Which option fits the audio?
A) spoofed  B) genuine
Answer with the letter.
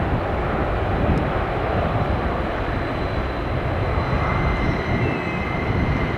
B